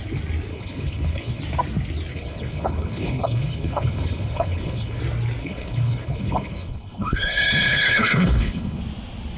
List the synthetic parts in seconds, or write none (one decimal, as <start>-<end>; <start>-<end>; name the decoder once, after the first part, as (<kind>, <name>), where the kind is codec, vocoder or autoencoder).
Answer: 0.5-1.4 (codec, HILCodec); 2.1-5.0; 5.4-8.8